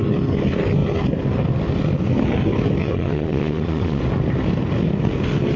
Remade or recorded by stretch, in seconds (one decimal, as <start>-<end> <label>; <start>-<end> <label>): 0.0-2.8 recorded; 2.8-4.0 remade; 4.0-5.6 recorded